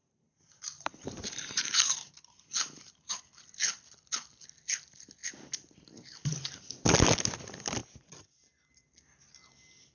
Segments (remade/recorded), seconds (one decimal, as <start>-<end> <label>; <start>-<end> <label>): 0.0-3.2 remade; 3.2-9.9 recorded